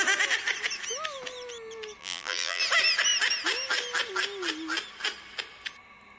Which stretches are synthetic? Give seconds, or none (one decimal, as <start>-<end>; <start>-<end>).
2.0-2.6